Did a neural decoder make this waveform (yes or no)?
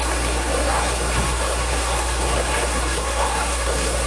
yes